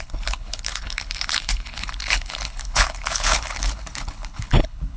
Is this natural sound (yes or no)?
no